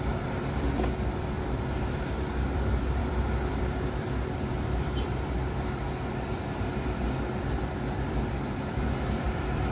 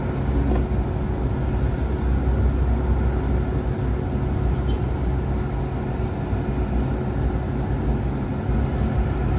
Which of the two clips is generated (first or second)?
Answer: first